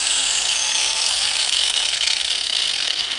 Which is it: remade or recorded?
remade